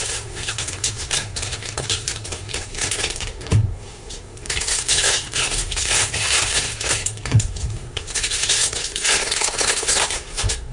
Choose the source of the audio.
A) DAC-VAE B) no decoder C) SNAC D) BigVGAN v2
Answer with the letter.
C